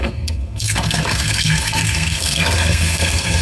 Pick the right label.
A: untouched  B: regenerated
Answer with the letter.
B